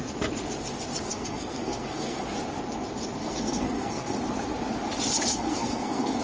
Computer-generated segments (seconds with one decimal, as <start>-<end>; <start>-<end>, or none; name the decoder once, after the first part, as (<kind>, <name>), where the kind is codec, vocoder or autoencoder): 1.1-2.2 (codec, SNAC); 3.2-4.2; 5.3-6.2